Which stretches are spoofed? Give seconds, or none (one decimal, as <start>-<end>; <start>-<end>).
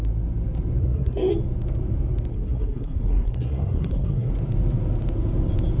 0.8-1.3; 2.3-4.3